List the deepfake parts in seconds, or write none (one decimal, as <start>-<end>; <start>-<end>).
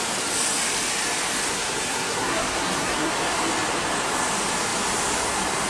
1.5-3.1